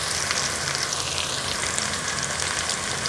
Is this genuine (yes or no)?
yes